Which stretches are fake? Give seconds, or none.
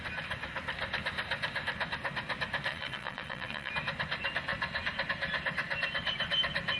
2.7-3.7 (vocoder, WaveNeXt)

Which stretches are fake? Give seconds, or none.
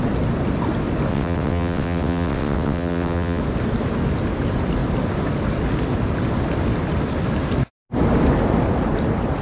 1.1-3.4 (vocoder, WaveNeXt)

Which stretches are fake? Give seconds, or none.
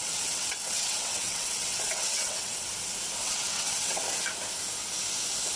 0.0-2.7 (vocoder, WaveNeXt); 3.2-4.0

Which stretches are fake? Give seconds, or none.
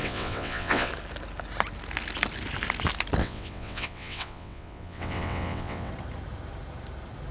0.0-0.9 (vocoder, WaveNeXt); 3.2-5.9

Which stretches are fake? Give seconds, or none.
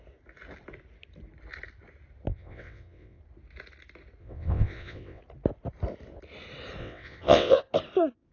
2.3-3.2 (vocoder, WaveNeXt); 4.2-5.2; 6.8-7.6